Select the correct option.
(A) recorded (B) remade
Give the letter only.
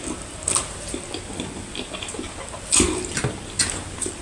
A